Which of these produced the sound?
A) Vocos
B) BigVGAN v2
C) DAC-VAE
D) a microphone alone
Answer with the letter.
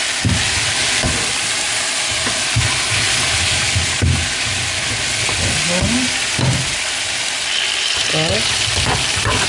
D